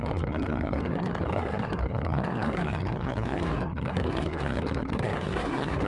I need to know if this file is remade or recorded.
remade